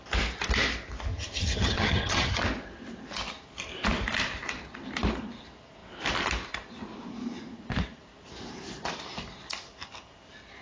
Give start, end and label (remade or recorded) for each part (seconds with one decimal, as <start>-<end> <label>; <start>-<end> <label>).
0.0-1.1 recorded; 1.1-2.4 remade; 2.4-10.6 recorded